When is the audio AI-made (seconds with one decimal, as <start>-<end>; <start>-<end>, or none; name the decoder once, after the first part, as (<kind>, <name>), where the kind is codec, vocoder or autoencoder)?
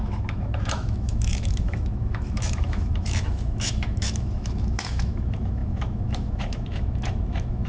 0.0-7.7 (autoencoder, DAC-VAE)